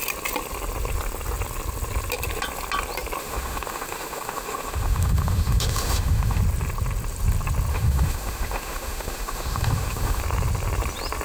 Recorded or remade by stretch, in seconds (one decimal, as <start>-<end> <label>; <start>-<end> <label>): 0.0-3.2 recorded; 3.2-6.4 remade; 6.4-7.7 recorded; 7.7-10.2 remade; 10.2-11.2 recorded